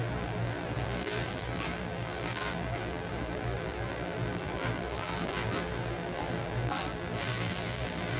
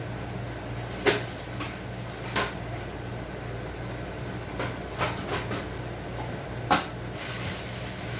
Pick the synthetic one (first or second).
first